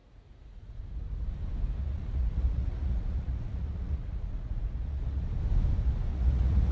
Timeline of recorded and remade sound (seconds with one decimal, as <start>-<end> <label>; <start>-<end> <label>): 0.0-1.3 remade; 1.3-1.8 recorded; 1.8-5.3 remade; 5.3-6.1 recorded; 6.1-6.7 remade